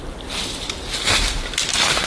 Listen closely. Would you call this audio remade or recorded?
remade